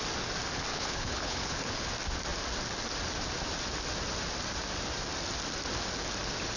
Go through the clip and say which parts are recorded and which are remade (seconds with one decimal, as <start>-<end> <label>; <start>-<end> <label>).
0.0-0.7 recorded; 0.7-1.9 remade; 1.9-6.6 recorded